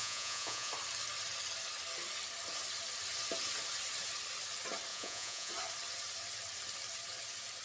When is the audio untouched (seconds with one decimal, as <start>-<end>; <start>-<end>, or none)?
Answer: 0.7-4.9; 5.5-7.6